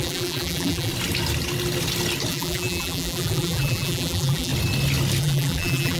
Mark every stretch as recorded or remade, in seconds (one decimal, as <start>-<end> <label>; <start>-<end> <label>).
0.0-0.9 remade; 0.9-2.3 recorded; 2.3-4.5 remade; 4.5-5.2 recorded; 5.2-6.0 remade